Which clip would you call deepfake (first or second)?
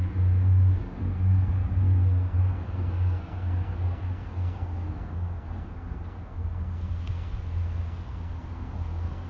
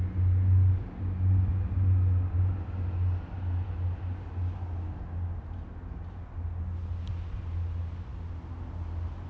first